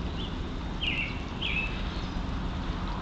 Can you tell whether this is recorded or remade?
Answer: recorded